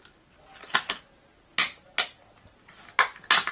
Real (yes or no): yes